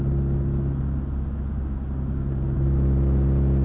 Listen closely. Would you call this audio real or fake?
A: real